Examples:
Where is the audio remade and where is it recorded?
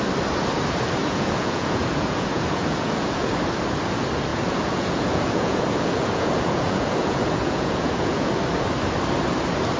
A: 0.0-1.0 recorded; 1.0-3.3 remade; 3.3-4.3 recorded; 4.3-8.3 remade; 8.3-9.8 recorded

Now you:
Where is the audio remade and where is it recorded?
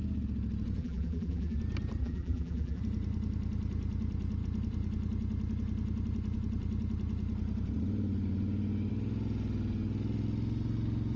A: 0.0-0.8 recorded; 0.8-1.6 remade; 1.6-2.0 recorded; 2.0-2.8 remade; 2.8-11.2 recorded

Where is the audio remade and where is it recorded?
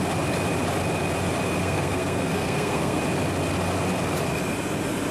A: 0.0-1.6 recorded; 1.6-3.0 remade; 3.0-5.1 recorded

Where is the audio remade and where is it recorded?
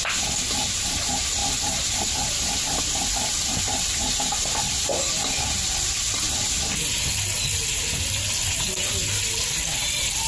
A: 0.0-10.3 recorded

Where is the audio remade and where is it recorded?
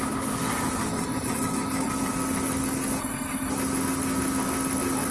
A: 0.0-0.9 recorded; 0.9-1.9 remade; 1.9-3.0 recorded; 3.0-3.5 remade; 3.5-5.1 recorded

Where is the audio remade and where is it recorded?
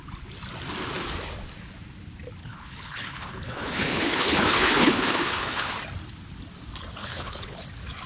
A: 0.0-2.4 recorded; 2.4-5.7 remade; 5.7-7.0 recorded; 7.0-7.6 remade; 7.6-8.1 recorded